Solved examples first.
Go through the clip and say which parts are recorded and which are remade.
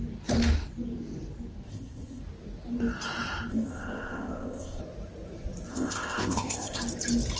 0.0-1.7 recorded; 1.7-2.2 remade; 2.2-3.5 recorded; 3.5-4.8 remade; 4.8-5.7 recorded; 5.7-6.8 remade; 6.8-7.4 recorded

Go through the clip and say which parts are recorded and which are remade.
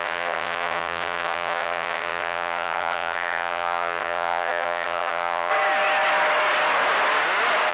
0.0-5.5 remade; 5.5-7.7 recorded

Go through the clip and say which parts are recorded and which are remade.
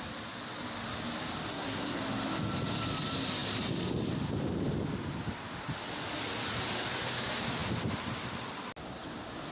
0.0-1.5 recorded; 1.5-2.0 remade; 2.0-9.5 recorded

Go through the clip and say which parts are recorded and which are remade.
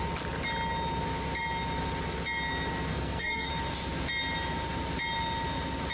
0.0-2.9 recorded; 2.9-3.5 remade; 3.5-5.9 recorded